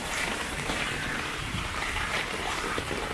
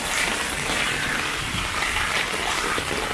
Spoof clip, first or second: first